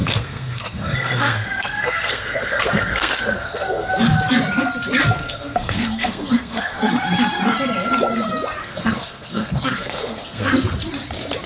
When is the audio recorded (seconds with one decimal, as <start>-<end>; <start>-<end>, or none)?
3.9-5.2; 6.9-8.6; 10.5-11.5